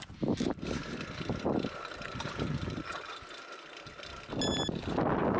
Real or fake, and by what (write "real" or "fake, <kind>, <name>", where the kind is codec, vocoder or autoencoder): real